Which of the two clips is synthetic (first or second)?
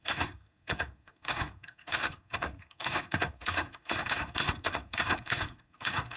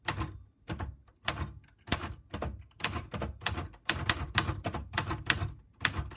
first